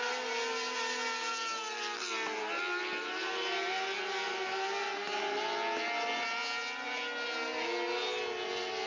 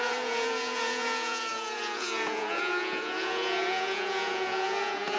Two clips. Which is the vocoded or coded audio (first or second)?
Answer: second